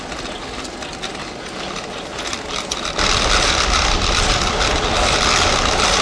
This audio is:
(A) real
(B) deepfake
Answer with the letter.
A